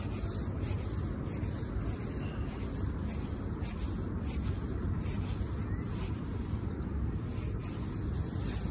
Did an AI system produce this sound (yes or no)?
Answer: no